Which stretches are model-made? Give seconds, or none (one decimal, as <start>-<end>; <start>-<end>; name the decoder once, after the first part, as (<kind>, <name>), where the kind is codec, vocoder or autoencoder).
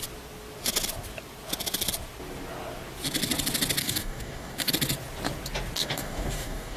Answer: 3.8-4.7 (codec, DAC); 5.8-6.8